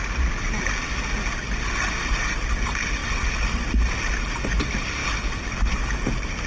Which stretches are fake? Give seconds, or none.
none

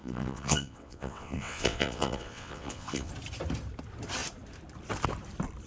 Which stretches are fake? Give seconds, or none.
0.0-3.1 (vocoder, WaveNeXt)

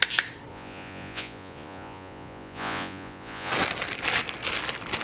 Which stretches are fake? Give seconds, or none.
0.5-3.5 (vocoder, Vocos)

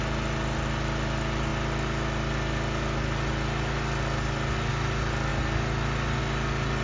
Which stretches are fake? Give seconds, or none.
none

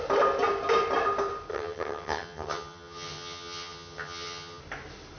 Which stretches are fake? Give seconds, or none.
1.5-4.6 (vocoder, HiFi-GAN)

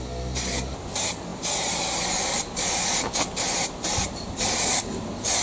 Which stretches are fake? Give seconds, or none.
none